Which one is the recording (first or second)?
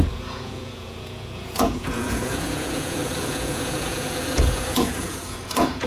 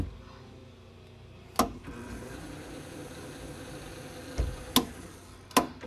second